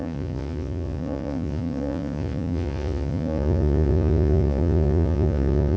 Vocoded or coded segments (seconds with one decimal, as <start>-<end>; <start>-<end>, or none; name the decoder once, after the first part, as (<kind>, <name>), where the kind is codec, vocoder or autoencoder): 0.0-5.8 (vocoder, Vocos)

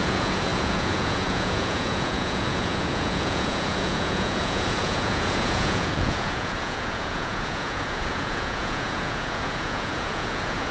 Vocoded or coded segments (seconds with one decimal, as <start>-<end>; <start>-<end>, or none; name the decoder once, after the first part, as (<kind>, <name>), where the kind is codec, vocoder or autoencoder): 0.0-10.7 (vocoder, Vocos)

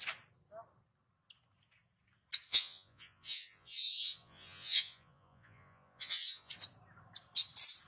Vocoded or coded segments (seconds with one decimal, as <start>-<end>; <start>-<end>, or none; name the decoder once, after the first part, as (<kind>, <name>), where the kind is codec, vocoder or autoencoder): 2.5-6.5 (vocoder, Vocos)

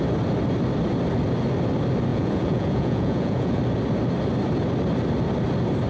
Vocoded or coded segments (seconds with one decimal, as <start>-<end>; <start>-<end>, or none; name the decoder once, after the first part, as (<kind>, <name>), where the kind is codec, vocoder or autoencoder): 2.1-3.6 (vocoder, Vocos)